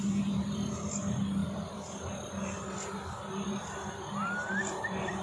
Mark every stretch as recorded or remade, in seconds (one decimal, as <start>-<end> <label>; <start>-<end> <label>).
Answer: 0.0-5.2 recorded